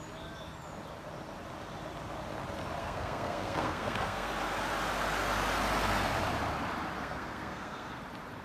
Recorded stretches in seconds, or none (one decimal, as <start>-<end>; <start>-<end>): 0.0-2.8; 4.3-7.0; 8.0-8.4